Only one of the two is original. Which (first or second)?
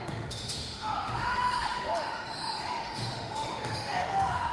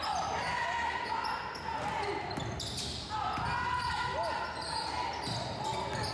second